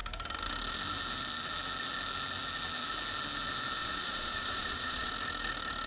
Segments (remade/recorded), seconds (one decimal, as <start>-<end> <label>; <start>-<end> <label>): 0.0-3.8 recorded; 3.8-5.1 remade; 5.1-5.9 recorded